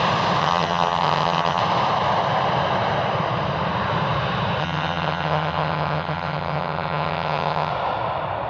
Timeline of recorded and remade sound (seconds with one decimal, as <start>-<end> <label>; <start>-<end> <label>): 0.0-0.4 recorded; 0.4-1.6 remade; 1.6-4.6 recorded; 4.6-7.7 remade; 7.7-8.5 recorded